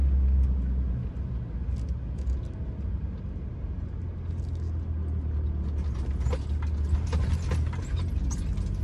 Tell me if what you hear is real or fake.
real